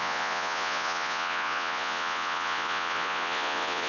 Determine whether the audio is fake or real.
fake